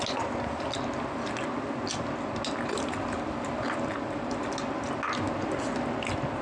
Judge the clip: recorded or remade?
recorded